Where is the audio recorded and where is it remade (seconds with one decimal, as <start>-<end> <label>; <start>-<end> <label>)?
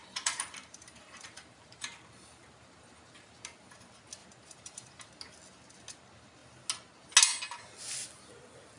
0.0-3.4 remade; 3.4-4.2 recorded; 4.2-5.1 remade; 5.1-8.8 recorded